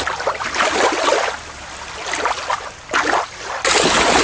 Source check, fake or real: real